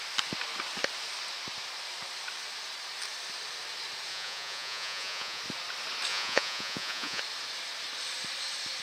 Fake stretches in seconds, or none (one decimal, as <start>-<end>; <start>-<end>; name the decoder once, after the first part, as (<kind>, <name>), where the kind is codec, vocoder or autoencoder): 4.1-5.4 (vocoder, Vocos); 6.1-7.2